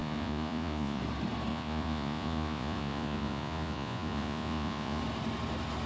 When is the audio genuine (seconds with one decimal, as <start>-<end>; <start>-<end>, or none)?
1.0-1.5; 5.0-5.9